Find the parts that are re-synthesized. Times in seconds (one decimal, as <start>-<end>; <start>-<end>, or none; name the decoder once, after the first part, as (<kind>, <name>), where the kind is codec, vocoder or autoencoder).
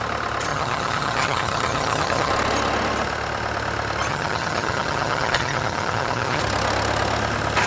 0.5-2.3 (vocoder, HiFi-GAN); 4.1-6.4